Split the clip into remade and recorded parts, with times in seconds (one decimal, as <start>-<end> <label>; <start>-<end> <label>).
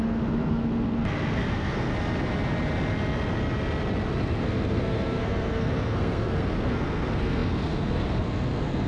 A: 0.0-1.9 remade; 1.9-4.2 recorded; 4.2-8.9 remade